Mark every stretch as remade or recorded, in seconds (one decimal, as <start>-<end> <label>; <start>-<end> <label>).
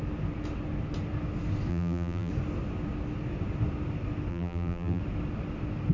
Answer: 0.0-1.7 recorded; 1.7-2.3 remade; 2.3-4.3 recorded; 4.3-5.0 remade; 5.0-5.9 recorded